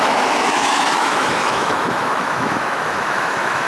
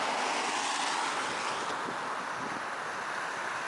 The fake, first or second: first